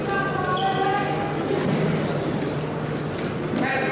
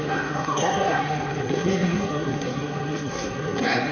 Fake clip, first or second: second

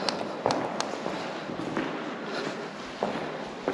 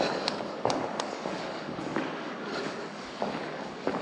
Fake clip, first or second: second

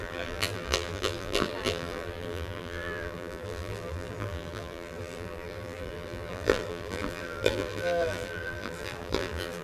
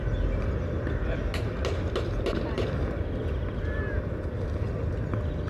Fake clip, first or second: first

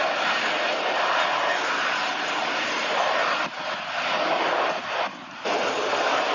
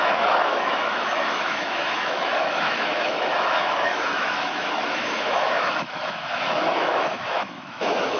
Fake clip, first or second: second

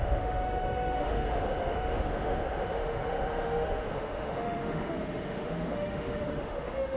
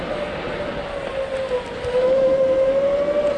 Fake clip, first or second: first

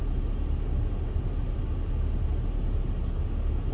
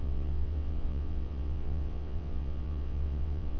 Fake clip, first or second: second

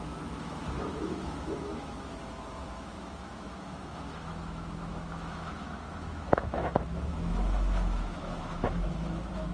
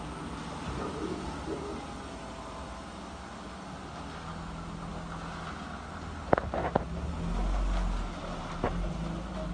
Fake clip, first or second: first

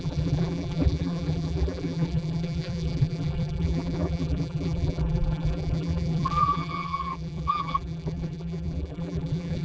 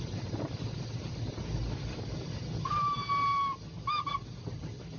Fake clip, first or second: first